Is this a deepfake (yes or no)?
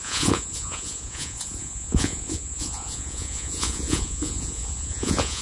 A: yes